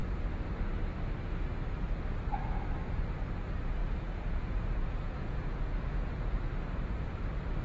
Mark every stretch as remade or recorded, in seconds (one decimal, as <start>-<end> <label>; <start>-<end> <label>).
0.0-3.8 recorded; 3.8-6.5 remade; 6.5-7.6 recorded